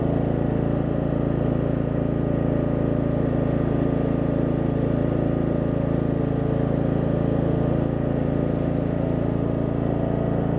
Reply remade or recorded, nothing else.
recorded